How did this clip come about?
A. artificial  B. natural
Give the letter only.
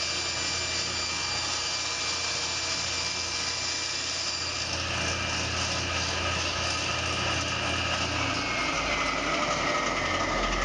B